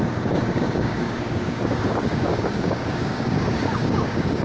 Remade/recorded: remade